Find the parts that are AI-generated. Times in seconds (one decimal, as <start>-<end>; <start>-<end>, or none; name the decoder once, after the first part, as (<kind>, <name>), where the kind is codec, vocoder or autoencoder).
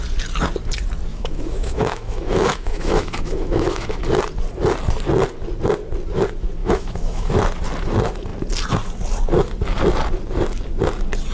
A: 1.1-4.0 (autoencoder, DAC-VAE); 6.6-7.3